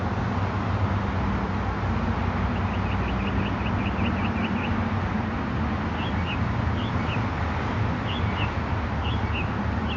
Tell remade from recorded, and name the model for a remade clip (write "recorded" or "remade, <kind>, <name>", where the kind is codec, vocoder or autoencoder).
recorded